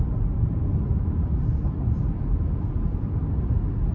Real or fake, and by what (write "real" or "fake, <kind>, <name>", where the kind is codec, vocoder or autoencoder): fake, vocoder, BigVGAN v2